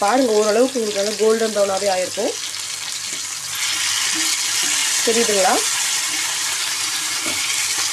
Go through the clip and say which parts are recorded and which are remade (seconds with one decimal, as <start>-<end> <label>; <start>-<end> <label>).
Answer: 0.0-4.8 recorded; 4.8-7.2 remade; 7.2-7.9 recorded